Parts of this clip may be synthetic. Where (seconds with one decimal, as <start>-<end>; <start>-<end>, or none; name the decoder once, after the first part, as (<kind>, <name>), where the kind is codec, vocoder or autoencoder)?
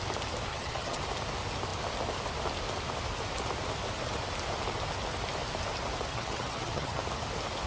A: 0.5-1.0 (vocoder, HiFi-GAN); 6.1-7.0